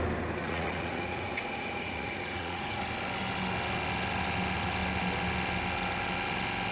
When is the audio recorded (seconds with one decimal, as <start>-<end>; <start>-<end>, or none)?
0.0-0.4; 2.8-6.7